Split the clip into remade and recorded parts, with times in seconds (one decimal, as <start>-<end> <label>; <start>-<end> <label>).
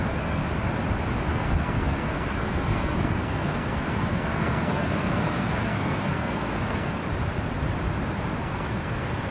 0.0-0.4 remade; 0.4-1.3 recorded; 1.3-7.0 remade; 7.0-8.4 recorded; 8.4-9.3 remade